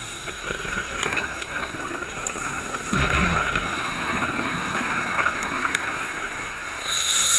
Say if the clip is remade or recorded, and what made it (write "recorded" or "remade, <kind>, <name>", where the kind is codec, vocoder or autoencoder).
remade, codec, SNAC